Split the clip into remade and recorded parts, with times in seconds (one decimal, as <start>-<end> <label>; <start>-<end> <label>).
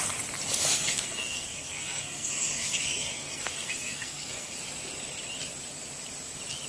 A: 0.0-0.6 recorded; 0.6-4.6 remade; 4.6-6.7 recorded